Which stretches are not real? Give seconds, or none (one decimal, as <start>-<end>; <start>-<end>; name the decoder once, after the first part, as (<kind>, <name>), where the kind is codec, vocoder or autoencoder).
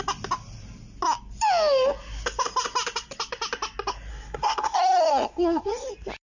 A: 4.1-5.9 (codec, SNAC)